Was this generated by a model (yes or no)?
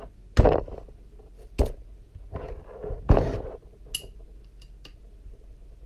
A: no